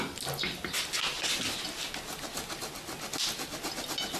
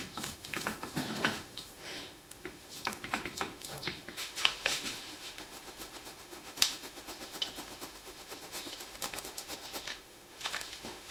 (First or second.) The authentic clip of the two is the first